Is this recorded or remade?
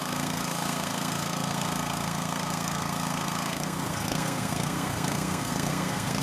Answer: remade